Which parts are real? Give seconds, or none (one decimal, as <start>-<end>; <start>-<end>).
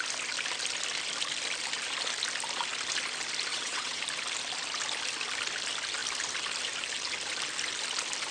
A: 0.0-3.5; 4.0-8.3